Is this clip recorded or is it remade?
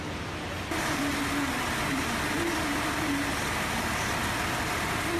recorded